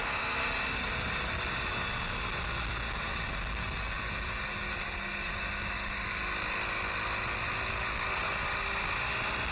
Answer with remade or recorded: recorded